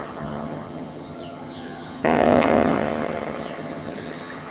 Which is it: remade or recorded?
remade